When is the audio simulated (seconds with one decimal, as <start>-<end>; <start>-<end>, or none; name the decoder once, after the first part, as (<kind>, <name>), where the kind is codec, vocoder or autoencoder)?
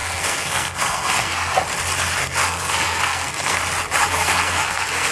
0.0-1.6 (codec, SNAC); 2.2-3.6; 4.0-5.1